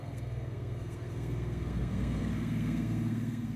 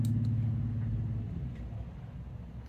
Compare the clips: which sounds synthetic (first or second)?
first